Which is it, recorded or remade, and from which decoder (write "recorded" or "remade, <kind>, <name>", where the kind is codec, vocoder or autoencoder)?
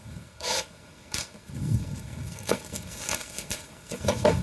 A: remade, codec, SNAC